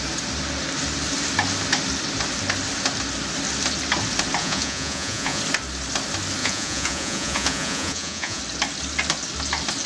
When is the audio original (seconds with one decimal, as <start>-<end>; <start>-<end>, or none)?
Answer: 0.0-4.4; 5.4-6.4; 8.4-9.9